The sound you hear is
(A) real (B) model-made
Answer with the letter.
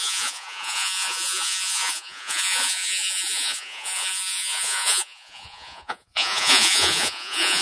B